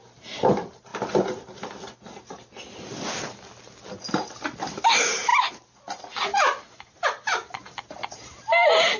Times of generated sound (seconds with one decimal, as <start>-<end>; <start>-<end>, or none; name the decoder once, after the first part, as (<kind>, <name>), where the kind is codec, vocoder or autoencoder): 0.0-0.9 (vocoder, BigVGAN v2); 4.7-5.3; 6.6-9.0